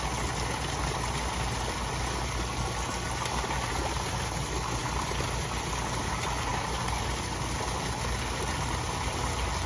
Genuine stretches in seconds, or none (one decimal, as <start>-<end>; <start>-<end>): 0.0-9.7